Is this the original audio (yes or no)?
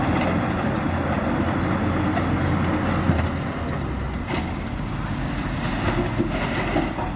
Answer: yes